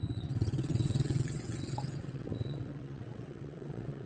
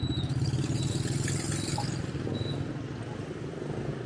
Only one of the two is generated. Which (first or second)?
first